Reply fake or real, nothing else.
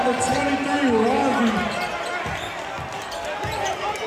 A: real